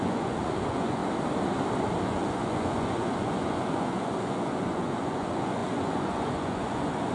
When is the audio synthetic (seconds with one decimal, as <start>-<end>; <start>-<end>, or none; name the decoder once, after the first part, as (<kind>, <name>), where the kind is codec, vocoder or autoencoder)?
0.0-1.0 (vocoder, Vocos); 2.0-7.1